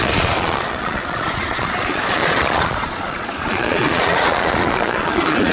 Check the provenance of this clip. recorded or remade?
remade